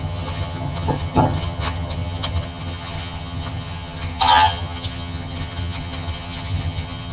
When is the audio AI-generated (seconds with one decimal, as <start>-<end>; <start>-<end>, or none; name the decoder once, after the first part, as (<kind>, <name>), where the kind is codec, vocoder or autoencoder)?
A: 0.0-7.1 (vocoder, HiFi-GAN)